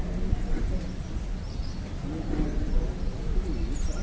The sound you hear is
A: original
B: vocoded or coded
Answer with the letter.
A